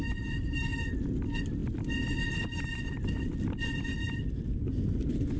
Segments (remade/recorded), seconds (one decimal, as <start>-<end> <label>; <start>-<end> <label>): 0.0-5.4 recorded

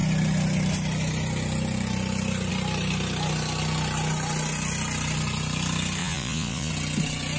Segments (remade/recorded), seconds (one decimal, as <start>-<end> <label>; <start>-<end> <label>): 0.0-6.0 recorded; 6.0-6.7 remade; 6.7-7.4 recorded

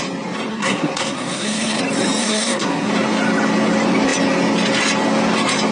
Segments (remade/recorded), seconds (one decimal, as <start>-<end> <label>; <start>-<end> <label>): 0.0-0.5 recorded; 0.5-1.8 remade; 1.8-2.2 recorded; 2.2-2.9 remade; 2.9-5.7 recorded

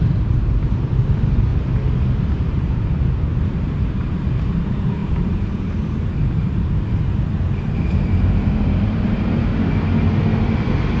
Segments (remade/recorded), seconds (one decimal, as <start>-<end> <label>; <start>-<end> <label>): 0.0-1.5 remade; 1.5-2.7 recorded; 2.7-9.5 remade; 9.5-10.6 recorded; 10.6-11.0 remade

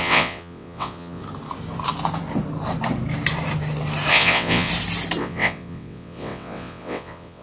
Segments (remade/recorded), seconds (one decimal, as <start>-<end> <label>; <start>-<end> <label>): 0.0-1.2 remade; 1.2-4.1 recorded; 4.1-4.7 remade; 4.7-5.2 recorded; 5.2-7.4 remade

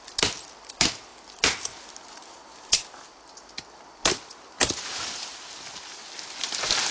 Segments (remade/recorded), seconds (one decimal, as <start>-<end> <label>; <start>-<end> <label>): 0.0-6.9 recorded

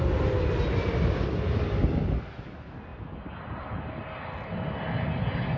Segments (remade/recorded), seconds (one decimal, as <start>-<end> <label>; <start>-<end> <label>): 0.0-5.6 recorded

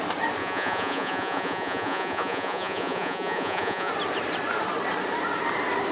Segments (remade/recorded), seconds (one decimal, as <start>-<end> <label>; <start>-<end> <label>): 0.0-0.4 recorded; 0.4-3.9 remade; 3.9-5.9 recorded